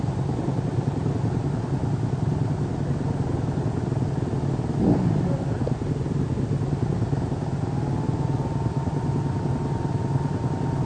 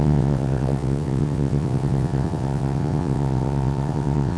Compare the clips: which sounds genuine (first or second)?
first